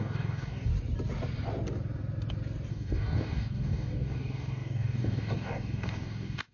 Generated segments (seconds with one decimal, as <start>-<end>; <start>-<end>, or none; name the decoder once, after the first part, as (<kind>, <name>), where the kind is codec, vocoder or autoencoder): 0.0-0.7 (codec, DAC); 2.7-6.5